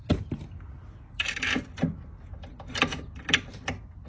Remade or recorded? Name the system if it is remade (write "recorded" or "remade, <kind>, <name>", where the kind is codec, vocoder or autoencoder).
recorded